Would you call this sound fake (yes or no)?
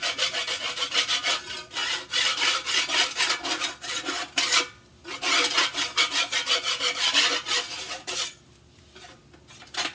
no